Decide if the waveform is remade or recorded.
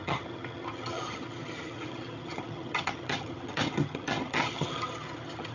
remade